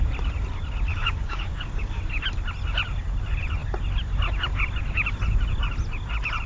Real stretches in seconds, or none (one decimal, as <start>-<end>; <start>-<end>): 0.0-0.9; 2.0-6.5